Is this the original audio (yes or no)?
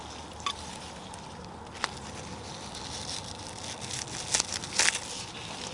yes